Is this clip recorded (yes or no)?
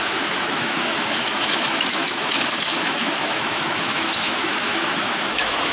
no